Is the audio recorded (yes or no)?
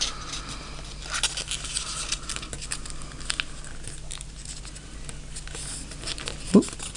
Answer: yes